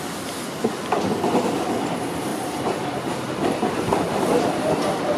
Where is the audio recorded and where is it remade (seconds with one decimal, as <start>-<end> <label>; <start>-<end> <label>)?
0.0-2.3 recorded; 2.3-3.3 remade; 3.3-3.9 recorded; 3.9-4.7 remade; 4.7-5.2 recorded